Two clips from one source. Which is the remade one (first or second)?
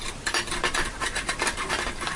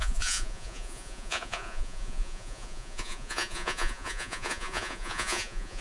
second